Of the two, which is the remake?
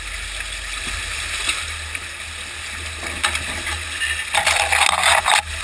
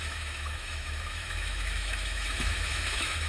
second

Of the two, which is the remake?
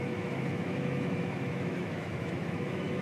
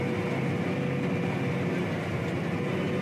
first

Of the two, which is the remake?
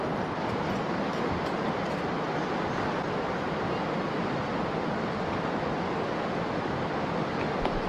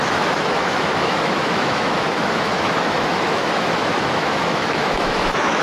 second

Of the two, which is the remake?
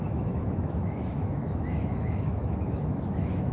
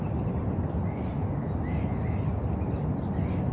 first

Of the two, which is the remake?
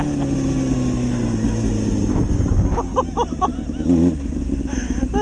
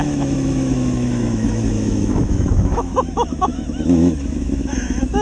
second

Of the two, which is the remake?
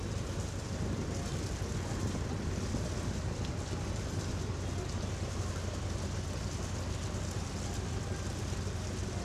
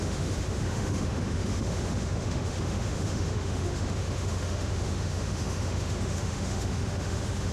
second